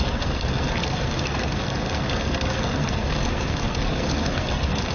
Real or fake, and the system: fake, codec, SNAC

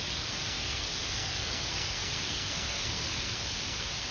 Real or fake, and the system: fake, codec, SNAC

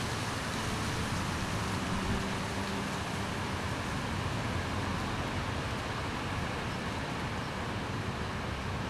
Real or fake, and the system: real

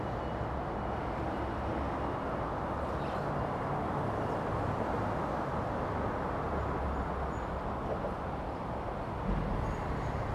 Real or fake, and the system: real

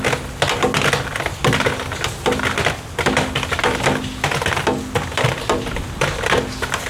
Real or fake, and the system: real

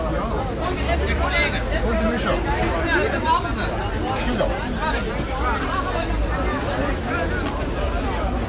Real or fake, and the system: real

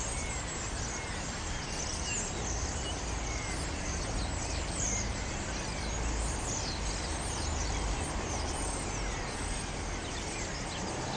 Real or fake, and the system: real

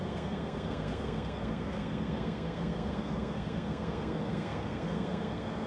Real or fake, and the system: fake, codec, SNAC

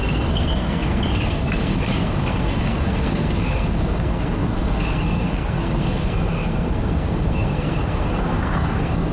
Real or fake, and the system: fake, codec, SNAC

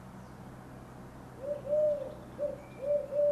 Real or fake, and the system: real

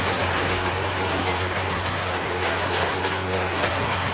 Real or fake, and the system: fake, codec, SNAC